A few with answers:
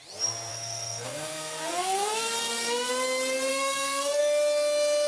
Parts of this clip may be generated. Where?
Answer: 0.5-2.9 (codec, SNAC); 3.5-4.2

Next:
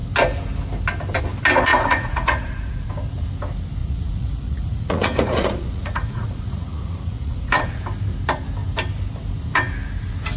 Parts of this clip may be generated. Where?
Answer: 1.7-2.9 (vocoder, Vocos); 3.8-7.7